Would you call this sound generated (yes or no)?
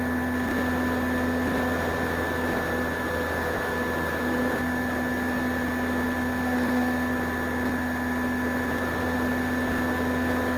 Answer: no